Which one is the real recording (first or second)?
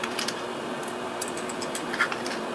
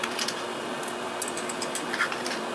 second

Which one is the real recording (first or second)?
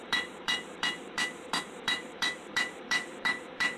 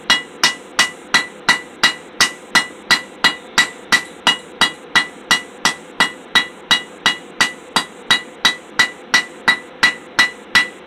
second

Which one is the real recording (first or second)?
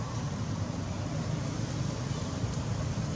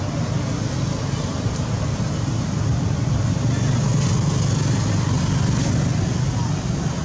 second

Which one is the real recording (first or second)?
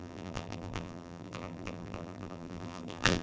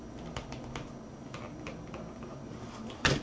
second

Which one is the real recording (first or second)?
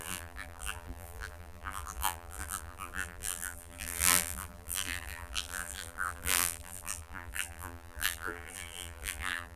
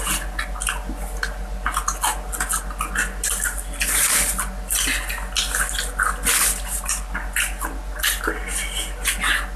second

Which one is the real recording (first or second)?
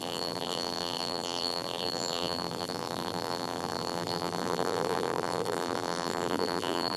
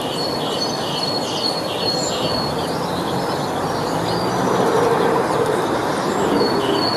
second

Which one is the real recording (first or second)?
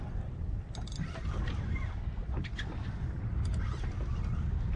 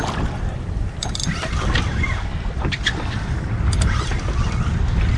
first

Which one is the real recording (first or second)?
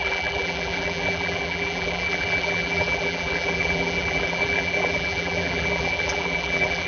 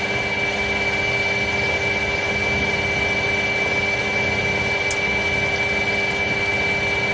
second